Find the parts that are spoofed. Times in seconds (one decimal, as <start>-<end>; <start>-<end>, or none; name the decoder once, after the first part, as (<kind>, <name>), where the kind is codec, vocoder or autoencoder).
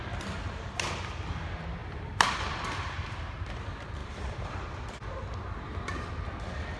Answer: 1.8-3.5 (vocoder, BigVGAN v2); 4.0-4.7